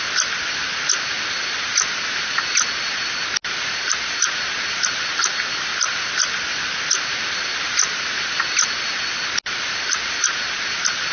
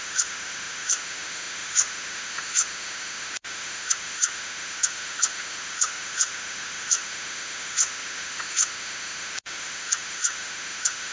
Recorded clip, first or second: first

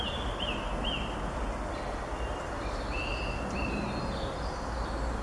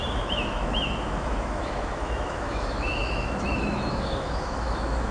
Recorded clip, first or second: first